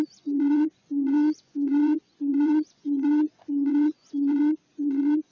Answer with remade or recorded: remade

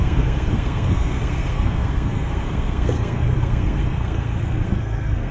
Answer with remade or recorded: remade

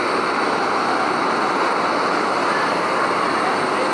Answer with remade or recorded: recorded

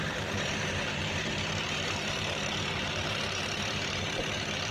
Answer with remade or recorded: remade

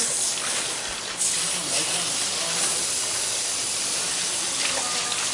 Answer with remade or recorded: recorded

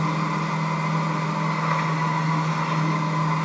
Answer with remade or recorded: recorded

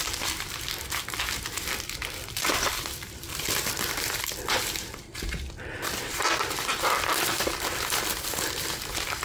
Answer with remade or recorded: remade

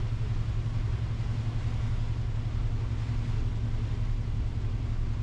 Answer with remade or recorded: recorded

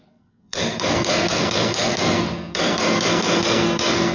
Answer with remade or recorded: remade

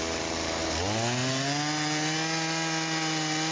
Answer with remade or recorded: recorded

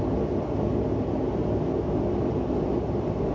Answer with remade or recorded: recorded